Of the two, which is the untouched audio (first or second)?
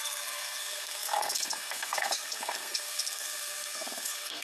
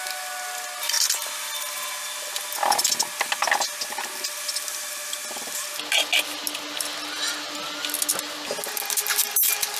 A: second